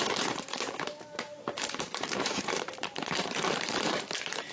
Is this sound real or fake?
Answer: fake